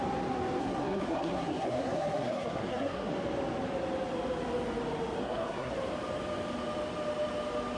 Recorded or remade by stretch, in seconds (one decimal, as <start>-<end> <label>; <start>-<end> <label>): 0.0-0.6 recorded; 0.6-3.1 remade; 3.1-5.2 recorded; 5.2-5.7 remade; 5.7-7.8 recorded